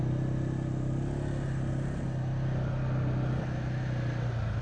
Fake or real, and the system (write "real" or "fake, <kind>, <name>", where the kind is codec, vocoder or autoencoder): real